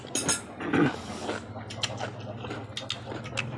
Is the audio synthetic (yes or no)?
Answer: no